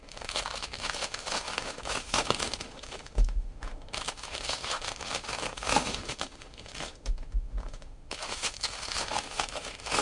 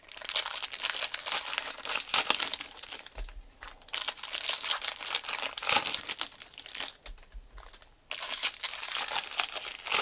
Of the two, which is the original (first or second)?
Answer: second